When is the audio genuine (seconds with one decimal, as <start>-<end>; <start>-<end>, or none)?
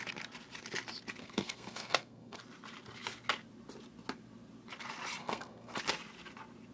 0.0-1.2; 2.4-5.2; 5.8-6.7